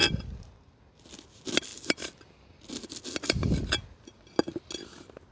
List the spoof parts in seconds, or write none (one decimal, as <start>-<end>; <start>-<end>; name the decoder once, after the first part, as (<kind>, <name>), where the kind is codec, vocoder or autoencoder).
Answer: none